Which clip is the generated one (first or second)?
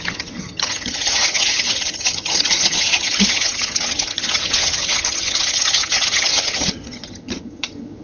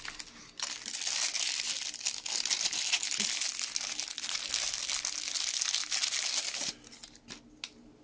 first